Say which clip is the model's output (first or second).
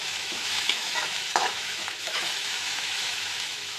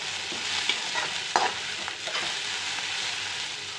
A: first